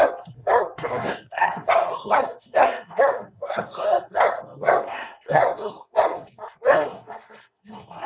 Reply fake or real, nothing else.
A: fake